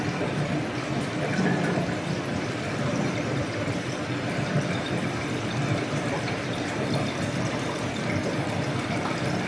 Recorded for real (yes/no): no